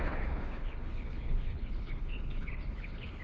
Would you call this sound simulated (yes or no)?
yes